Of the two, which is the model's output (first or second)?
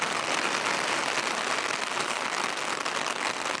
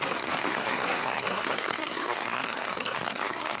second